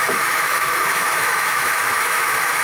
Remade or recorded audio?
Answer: remade